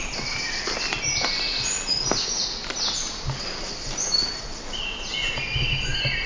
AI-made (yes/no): no